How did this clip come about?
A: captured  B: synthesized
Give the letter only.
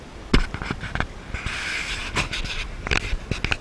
A